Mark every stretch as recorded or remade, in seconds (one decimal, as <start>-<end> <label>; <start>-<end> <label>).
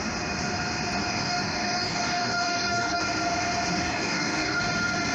0.0-1.1 recorded; 1.1-3.0 remade; 3.0-3.7 recorded; 3.7-4.6 remade; 4.6-5.1 recorded